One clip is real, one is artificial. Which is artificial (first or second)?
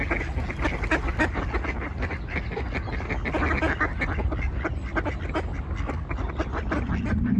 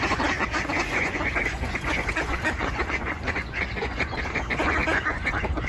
second